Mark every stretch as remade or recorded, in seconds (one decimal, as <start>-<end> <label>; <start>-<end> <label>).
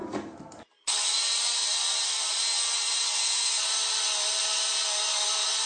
0.0-5.7 recorded